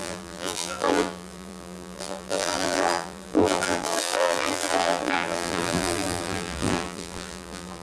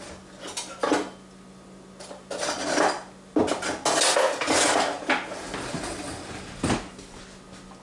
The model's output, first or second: first